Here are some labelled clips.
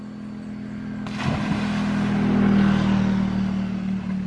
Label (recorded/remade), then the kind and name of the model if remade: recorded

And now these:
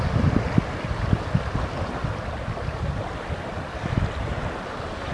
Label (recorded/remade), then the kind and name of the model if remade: recorded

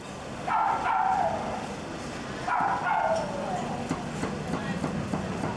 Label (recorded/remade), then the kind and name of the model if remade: recorded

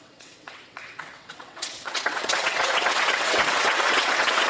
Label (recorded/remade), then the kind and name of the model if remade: remade, vocoder, WaveNeXt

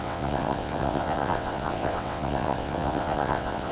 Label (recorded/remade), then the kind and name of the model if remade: remade, vocoder, WaveNeXt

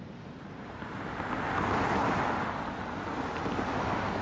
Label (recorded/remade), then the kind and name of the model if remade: recorded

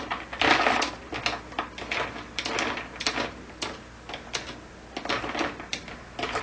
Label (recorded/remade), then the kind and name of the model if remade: recorded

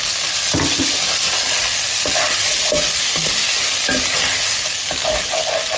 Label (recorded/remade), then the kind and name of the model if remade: recorded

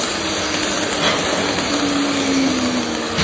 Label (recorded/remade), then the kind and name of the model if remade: recorded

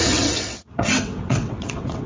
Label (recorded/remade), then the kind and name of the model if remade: remade, vocoder, WaveNeXt